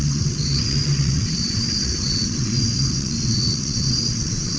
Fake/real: fake